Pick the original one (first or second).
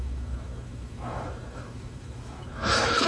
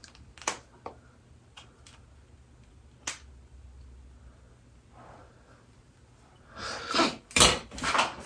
second